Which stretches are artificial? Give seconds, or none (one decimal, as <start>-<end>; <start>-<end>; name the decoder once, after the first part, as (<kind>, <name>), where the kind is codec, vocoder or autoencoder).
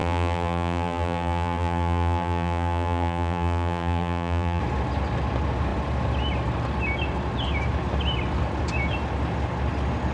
0.0-4.6 (vocoder, BigVGAN v2)